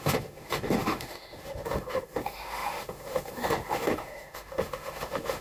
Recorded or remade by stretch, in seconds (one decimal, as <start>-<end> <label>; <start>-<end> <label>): 0.0-5.4 remade